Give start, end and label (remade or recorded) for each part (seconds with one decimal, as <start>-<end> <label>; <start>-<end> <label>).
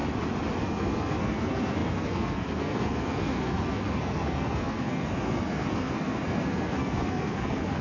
0.0-0.6 recorded; 0.6-7.8 remade